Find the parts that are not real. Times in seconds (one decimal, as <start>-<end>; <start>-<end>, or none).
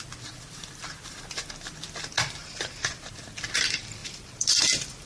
2.4-3.1; 4.0-4.6